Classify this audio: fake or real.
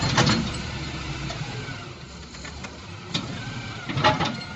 real